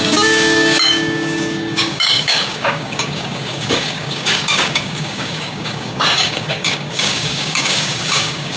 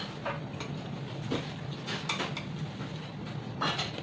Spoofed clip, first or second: first